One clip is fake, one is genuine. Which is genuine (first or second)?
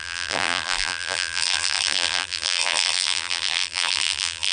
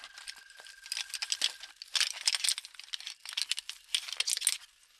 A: second